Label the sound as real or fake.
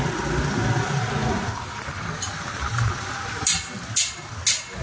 real